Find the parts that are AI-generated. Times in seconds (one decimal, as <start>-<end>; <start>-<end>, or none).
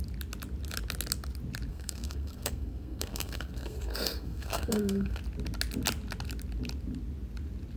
1.7-5.2